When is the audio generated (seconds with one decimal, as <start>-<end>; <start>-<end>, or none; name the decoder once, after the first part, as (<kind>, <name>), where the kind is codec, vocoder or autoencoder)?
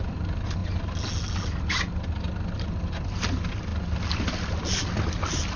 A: none